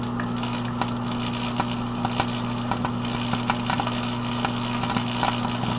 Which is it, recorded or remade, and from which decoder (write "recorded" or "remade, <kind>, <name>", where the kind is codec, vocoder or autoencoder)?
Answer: recorded